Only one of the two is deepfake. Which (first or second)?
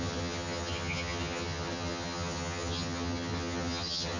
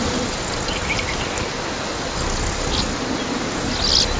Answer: first